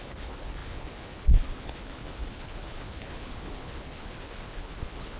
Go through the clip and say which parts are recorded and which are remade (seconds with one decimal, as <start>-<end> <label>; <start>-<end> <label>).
0.0-5.2 remade